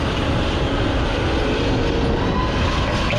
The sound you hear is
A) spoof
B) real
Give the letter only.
B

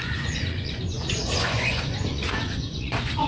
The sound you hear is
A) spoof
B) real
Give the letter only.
A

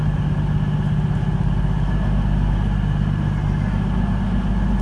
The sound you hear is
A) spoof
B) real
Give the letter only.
B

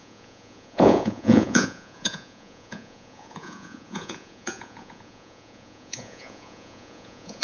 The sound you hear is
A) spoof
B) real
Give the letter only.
A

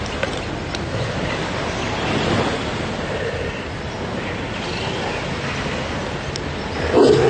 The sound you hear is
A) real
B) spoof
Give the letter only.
A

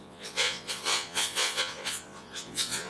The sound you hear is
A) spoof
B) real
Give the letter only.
A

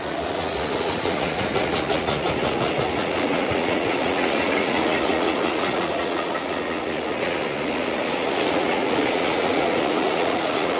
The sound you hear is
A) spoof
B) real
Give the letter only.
A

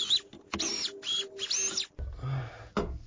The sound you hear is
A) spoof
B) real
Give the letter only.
B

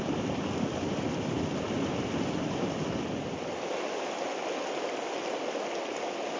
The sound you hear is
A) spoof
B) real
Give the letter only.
B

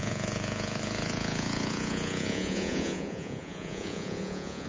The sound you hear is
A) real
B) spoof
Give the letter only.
B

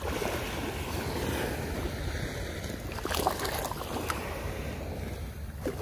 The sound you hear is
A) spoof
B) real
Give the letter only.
B